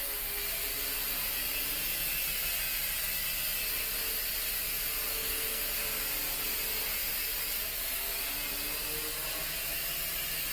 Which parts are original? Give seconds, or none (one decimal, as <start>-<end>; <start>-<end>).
0.0-5.1; 5.7-10.5

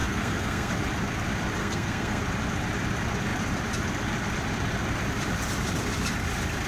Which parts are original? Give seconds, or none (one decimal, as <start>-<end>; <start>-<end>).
0.7-1.6; 2.2-6.7